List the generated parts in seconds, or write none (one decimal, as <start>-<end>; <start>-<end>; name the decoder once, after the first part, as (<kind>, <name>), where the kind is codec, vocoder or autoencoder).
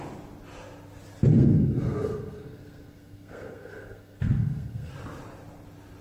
1.3-4.9 (codec, SNAC)